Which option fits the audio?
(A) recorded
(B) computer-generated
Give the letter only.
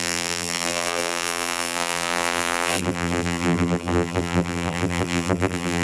B